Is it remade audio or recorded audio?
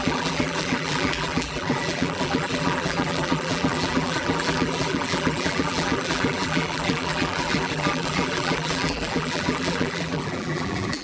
remade